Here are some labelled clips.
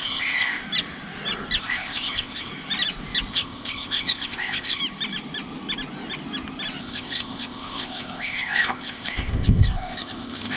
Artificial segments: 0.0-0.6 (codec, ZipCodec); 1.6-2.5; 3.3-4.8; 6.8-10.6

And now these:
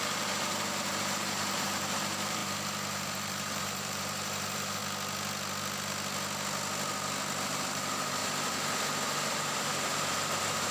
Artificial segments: 0.0-4.8 (vocoder, BigVGAN v2); 7.4-8.2; 9.3-10.7

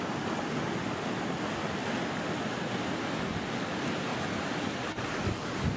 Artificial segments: none

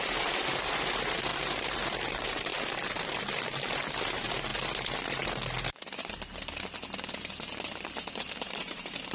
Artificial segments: 0.0-1.3 (vocoder, BigVGAN v2); 2.1-2.5; 4.0-4.5; 8.1-9.1

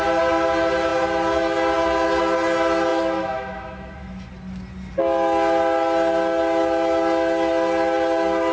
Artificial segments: 2.9-4.3 (autoencoder, DAC-VAE)